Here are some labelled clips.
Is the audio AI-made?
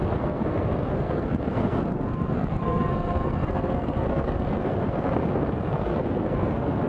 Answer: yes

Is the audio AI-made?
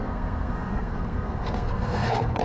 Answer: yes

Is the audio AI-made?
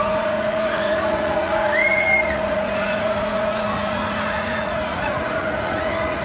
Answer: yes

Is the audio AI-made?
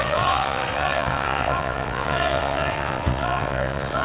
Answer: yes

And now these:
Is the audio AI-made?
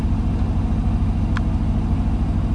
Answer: no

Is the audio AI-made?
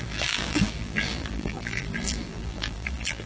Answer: yes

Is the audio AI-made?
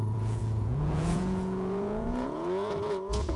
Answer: yes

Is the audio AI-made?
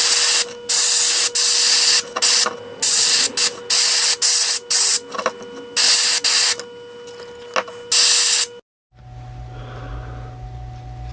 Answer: no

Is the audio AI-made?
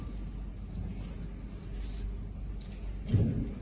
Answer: no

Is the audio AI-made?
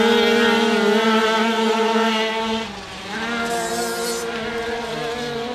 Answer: no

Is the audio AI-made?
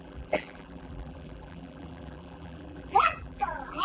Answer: yes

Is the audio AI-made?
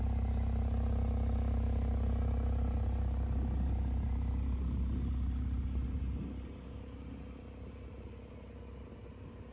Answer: no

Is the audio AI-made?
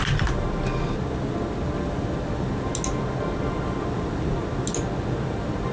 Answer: no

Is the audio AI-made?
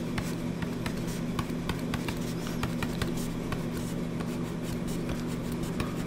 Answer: no